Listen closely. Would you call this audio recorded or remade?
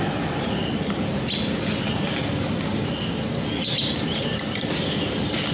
recorded